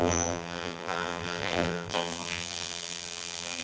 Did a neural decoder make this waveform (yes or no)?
yes